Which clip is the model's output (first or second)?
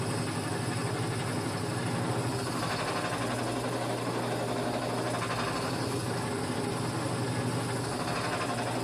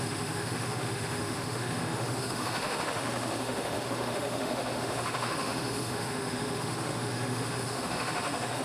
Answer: second